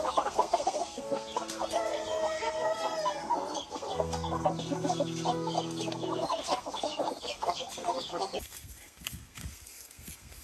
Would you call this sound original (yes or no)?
no